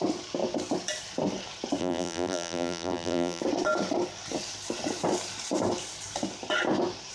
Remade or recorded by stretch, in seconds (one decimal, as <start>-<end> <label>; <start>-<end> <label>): 0.0-1.8 recorded; 1.8-3.4 remade; 3.4-7.1 recorded